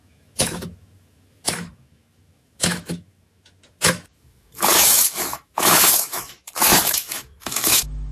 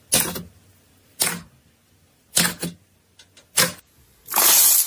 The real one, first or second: second